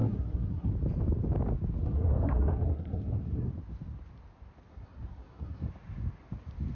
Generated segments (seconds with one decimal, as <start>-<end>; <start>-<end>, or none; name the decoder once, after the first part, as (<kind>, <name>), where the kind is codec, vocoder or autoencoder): 0.0-0.7 (codec, SNAC); 1.8-3.5; 4.7-5.7